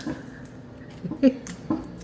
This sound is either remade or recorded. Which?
recorded